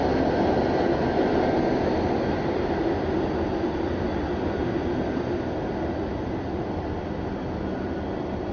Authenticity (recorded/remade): recorded